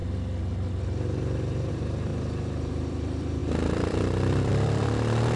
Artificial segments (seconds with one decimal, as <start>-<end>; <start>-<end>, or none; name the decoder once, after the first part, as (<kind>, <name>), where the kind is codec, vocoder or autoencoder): 1.7-2.1 (vocoder, BigVGAN v2); 2.7-5.4